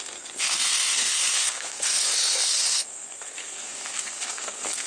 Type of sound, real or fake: fake